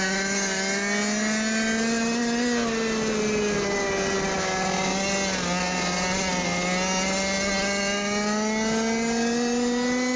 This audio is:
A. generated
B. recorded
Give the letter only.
B